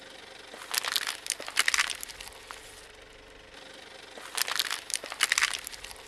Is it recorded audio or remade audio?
recorded